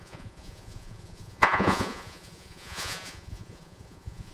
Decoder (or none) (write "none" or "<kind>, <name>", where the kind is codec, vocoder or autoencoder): vocoder, Vocos